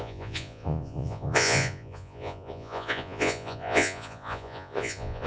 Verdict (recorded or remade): remade